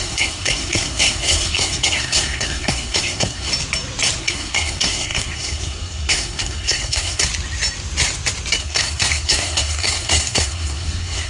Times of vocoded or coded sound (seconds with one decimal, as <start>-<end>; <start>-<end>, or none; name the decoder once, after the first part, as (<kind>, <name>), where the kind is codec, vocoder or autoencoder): 0.0-3.5 (codec, SNAC); 4.2-7.3; 8.6-11.3